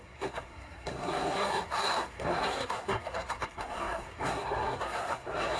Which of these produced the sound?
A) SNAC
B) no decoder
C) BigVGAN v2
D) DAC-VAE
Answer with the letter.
A